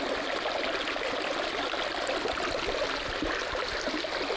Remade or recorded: recorded